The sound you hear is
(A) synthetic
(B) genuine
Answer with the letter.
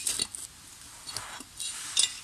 B